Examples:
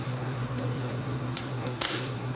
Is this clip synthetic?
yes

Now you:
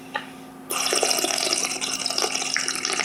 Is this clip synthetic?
no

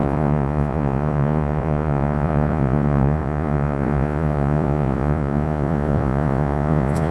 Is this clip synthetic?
yes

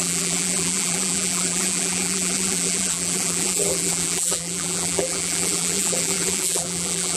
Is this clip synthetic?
yes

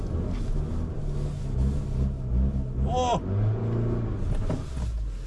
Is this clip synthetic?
no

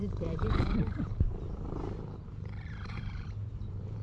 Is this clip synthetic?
yes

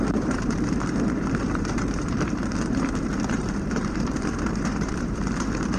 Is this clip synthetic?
yes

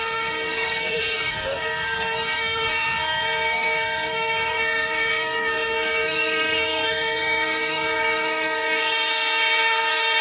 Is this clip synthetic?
yes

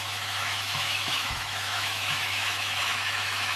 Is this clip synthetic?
yes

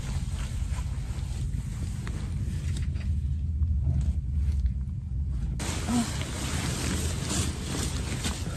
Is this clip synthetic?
no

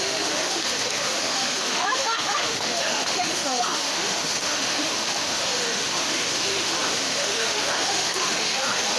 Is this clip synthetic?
yes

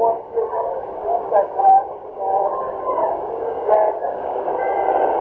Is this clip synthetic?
yes